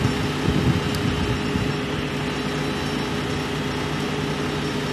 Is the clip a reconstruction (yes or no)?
no